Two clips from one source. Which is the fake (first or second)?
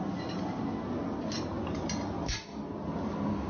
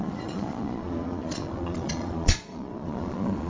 second